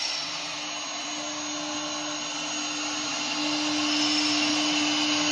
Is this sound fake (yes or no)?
no